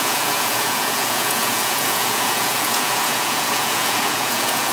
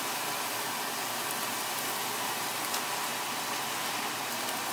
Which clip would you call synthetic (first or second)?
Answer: first